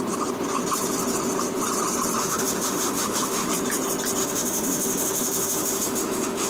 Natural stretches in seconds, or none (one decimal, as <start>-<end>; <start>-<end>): 0.0-2.2; 3.5-4.2